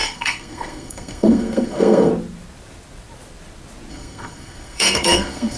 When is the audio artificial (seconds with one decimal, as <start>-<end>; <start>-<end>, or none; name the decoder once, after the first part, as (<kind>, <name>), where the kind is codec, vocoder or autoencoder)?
0.0-2.1 (codec, SNAC); 3.9-5.6